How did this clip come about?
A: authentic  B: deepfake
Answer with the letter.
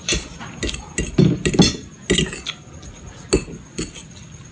A